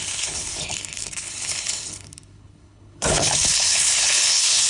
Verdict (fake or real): fake